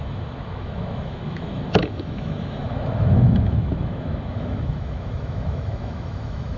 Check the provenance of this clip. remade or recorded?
remade